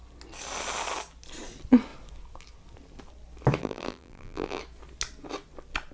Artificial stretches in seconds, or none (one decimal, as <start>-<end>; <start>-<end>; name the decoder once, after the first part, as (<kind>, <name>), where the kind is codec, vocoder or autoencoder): 3.6-4.6 (vocoder, BigVGAN v2)